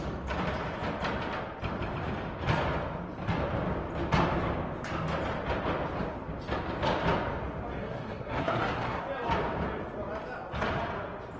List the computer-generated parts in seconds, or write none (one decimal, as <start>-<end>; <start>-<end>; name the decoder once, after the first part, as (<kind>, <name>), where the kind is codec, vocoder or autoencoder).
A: 7.8-9.0 (codec, SNAC)